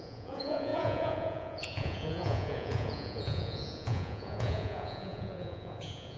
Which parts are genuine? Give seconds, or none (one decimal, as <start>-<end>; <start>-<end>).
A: none